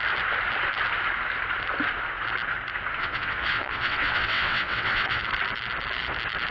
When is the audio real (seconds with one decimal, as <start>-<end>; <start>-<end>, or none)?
0.0-3.0; 5.2-6.5